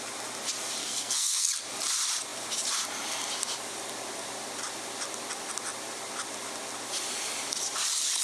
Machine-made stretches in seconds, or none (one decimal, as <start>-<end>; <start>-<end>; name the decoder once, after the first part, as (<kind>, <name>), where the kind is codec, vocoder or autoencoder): 0.8-1.5 (codec, SNAC)